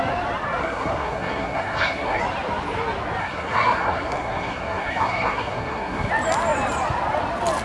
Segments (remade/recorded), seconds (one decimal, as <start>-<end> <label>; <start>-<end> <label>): 0.0-0.6 recorded; 0.6-2.2 remade; 2.2-3.2 recorded; 3.2-6.1 remade; 6.1-7.6 recorded